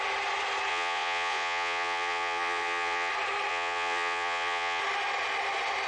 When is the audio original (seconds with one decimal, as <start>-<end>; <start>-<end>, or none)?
0.0-0.7; 3.1-3.5; 4.8-5.9